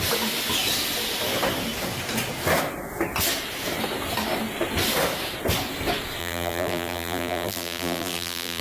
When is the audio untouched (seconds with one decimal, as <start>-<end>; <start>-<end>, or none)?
0.0-6.2